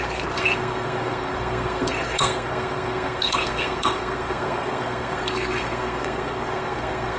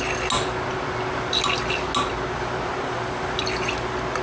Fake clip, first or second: first